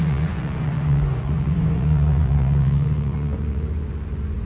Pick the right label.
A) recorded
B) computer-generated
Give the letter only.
B